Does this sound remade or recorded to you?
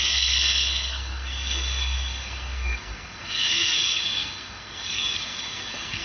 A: remade